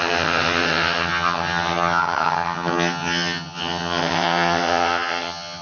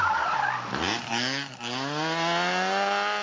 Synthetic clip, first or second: first